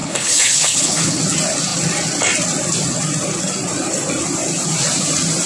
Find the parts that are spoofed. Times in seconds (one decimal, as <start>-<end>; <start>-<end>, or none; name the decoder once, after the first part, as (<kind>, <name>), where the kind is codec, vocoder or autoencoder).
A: 0.0-1.2 (codec, HILCodec)